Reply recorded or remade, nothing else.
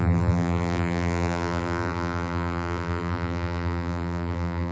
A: remade